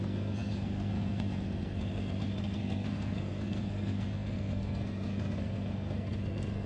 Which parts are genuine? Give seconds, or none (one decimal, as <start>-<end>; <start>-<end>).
none